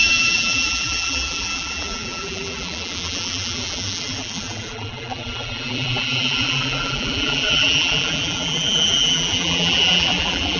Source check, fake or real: fake